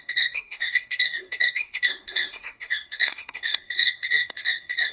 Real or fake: fake